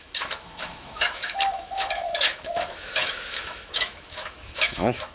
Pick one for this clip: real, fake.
fake